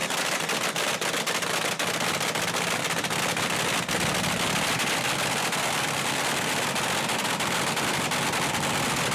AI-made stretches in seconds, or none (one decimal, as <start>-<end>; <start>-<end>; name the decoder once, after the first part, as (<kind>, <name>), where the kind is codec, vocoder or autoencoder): none